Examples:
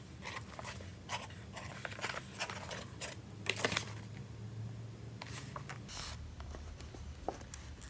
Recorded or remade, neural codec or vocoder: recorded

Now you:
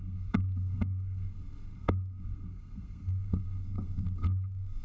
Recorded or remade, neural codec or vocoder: remade, codec, SNAC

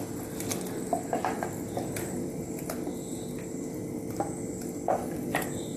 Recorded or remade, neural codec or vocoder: recorded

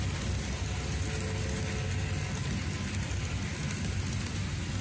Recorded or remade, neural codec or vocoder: recorded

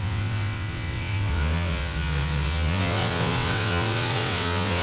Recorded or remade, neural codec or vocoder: remade, vocoder, WaveNeXt